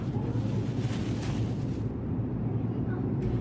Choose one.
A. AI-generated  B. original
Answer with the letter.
B